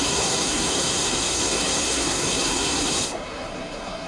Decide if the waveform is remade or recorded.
remade